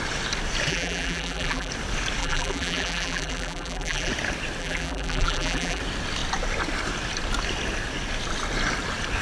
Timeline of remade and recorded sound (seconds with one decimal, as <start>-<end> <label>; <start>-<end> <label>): 0.0-0.7 recorded; 0.7-1.7 remade; 1.7-2.2 recorded; 2.2-4.1 remade; 4.1-4.6 recorded; 4.6-5.8 remade; 5.8-9.2 recorded